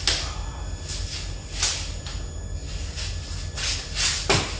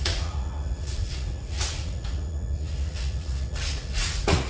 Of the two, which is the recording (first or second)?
first